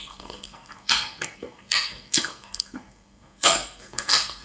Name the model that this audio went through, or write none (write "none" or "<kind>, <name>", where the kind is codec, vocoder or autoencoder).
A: codec, SNAC